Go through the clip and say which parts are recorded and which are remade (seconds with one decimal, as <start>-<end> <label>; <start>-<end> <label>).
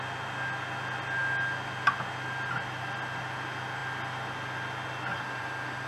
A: 0.0-5.9 recorded